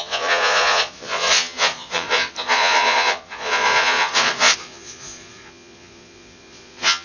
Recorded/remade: remade